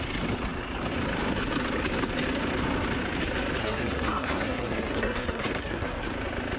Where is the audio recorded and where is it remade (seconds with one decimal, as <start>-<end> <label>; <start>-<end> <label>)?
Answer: 0.0-3.6 recorded; 3.6-6.1 remade; 6.1-6.6 recorded